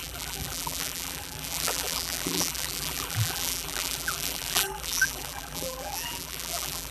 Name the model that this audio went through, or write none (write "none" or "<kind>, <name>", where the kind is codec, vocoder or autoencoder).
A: vocoder, BigVGAN v2